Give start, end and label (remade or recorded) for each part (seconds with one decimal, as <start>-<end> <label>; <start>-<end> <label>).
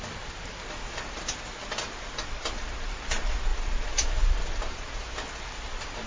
0.0-6.1 recorded